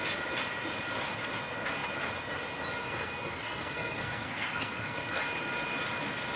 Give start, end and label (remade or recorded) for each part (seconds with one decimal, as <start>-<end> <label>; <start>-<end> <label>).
0.0-2.8 recorded; 2.8-5.2 remade; 5.2-6.4 recorded